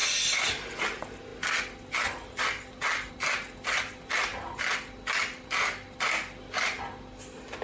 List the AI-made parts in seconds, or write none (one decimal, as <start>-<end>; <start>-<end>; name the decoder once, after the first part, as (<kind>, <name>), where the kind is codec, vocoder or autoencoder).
none